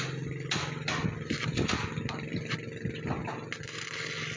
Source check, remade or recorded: recorded